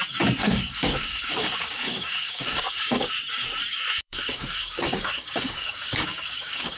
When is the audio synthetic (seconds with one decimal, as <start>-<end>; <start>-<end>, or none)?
0.4-3.1; 3.7-6.8